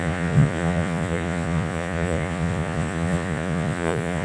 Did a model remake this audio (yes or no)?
yes